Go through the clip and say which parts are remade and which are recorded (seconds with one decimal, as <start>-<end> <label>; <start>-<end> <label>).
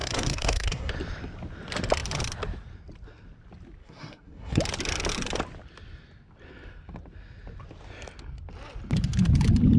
0.0-0.9 remade; 0.9-3.8 recorded; 3.8-4.6 remade; 4.6-9.8 recorded